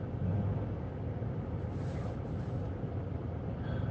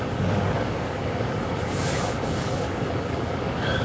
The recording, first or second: first